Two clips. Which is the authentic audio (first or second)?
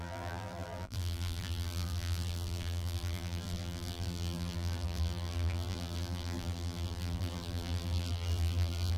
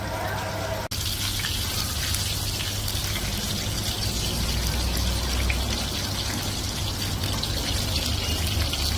second